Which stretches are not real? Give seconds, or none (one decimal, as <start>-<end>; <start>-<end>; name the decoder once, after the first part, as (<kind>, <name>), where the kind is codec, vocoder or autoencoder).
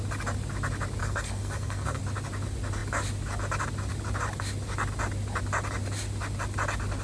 1.0-2.0 (codec, SNAC)